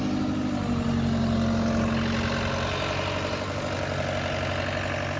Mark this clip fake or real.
real